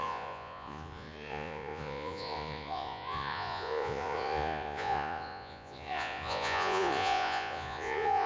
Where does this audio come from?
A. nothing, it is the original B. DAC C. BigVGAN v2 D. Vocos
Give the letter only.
D